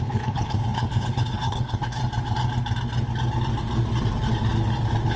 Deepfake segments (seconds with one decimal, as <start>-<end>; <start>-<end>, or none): 0.0-2.0